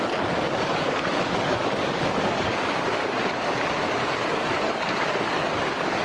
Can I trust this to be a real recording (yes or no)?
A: no